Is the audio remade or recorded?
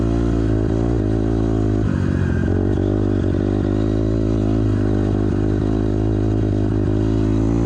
recorded